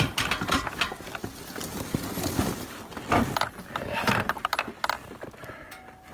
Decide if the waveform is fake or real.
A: real